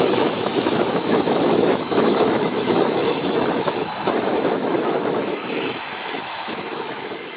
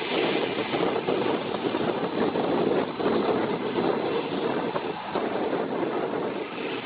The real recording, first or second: second